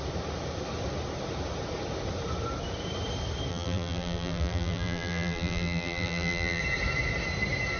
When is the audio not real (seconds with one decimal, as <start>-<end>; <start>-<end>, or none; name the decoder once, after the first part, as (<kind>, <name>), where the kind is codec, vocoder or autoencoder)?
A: 3.5-6.6 (vocoder, BigVGAN v2)